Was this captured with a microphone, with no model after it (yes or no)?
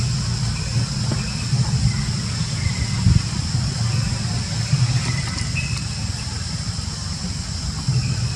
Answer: yes